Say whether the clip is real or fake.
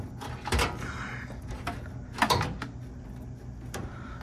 real